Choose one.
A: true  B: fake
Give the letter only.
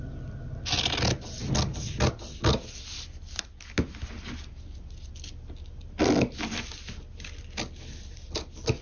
A